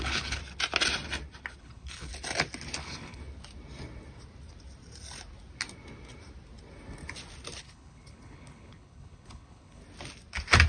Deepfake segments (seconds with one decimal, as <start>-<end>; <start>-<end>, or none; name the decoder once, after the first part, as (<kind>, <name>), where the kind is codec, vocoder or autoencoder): 0.0-0.4 (codec, HILCodec); 1.6-2.1; 2.8-3.2; 7.6-9.8